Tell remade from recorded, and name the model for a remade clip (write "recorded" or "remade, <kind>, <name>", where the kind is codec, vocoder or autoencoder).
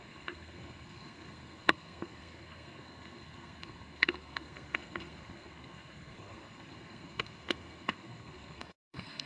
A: remade, codec, SNAC